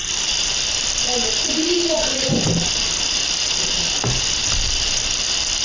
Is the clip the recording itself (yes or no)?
yes